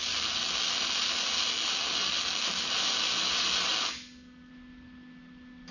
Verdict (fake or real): real